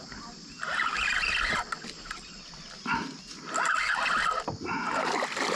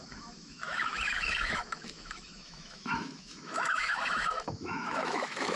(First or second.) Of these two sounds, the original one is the first